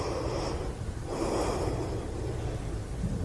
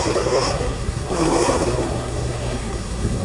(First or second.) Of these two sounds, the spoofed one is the second